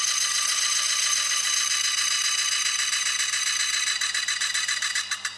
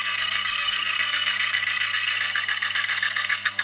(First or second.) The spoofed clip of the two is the second